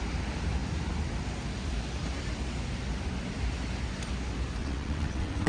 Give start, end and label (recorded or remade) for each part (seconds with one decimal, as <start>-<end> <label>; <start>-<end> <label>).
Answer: 0.0-4.6 recorded; 4.6-5.5 remade